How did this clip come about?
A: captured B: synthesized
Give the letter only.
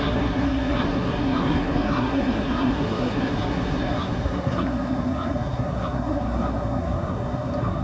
B